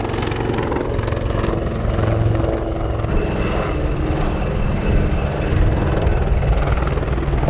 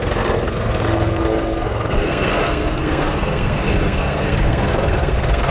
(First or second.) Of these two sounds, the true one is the first